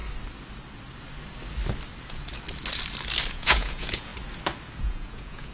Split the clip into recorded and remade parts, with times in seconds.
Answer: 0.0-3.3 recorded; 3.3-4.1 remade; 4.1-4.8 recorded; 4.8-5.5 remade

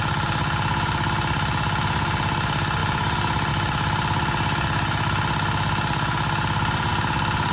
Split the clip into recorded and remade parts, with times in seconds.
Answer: 0.0-7.5 recorded

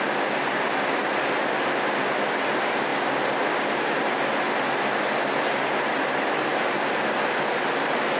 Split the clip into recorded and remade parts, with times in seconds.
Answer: 0.0-8.2 recorded

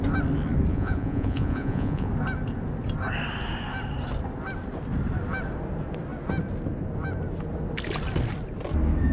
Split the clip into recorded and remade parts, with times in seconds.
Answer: 0.0-0.7 recorded; 0.7-2.1 remade; 2.1-9.1 recorded

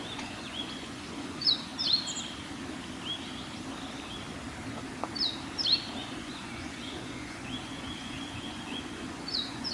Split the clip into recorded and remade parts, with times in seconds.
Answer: 0.0-1.7 remade; 1.7-6.0 recorded; 6.0-9.7 remade

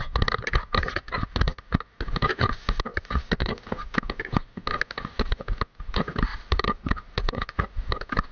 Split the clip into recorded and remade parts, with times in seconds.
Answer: 0.0-0.8 recorded; 0.8-1.8 remade; 1.8-2.9 recorded; 2.9-3.5 remade; 3.5-6.3 recorded; 6.3-7.9 remade; 7.9-8.3 recorded